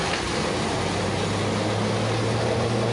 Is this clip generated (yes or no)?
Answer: no